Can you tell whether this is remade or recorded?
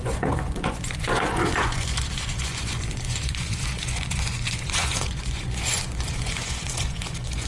remade